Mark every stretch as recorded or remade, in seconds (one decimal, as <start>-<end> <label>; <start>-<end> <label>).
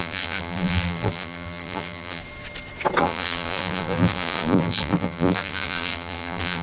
0.0-2.2 remade; 2.2-3.0 recorded; 3.0-6.6 remade